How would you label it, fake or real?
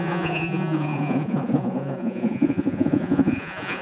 fake